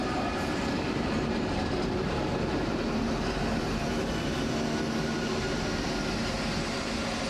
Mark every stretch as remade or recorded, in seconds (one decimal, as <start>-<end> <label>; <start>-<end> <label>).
0.0-4.0 remade; 4.0-6.2 recorded; 6.2-7.3 remade